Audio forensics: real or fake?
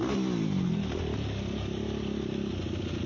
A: real